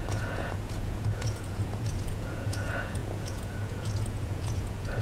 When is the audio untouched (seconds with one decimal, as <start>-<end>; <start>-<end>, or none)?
none